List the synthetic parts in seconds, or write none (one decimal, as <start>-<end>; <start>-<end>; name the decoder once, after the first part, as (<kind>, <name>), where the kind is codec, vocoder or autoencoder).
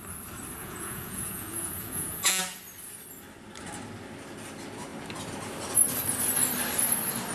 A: 0.6-2.4 (vocoder, Vocos)